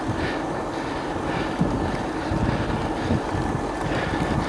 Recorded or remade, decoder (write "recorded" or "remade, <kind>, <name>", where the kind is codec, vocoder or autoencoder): recorded